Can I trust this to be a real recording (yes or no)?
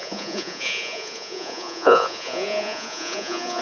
no